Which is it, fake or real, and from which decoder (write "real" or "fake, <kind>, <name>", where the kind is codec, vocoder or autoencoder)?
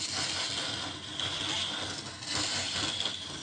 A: real